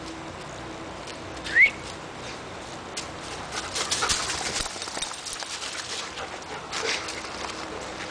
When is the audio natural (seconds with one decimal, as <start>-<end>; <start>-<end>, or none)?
0.0-8.1

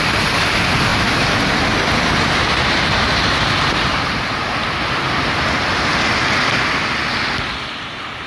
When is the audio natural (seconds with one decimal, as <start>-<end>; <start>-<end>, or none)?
0.0-0.9; 4.3-8.3

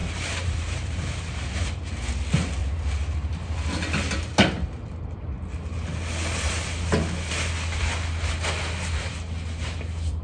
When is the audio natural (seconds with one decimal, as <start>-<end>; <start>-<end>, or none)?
2.1-10.2

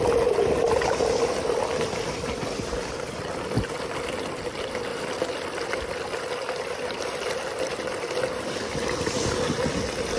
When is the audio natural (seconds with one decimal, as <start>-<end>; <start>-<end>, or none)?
0.0-4.9; 8.7-10.2

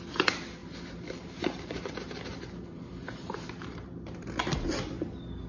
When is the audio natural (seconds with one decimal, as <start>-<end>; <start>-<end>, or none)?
0.0-0.6; 1.9-2.3; 4.4-5.5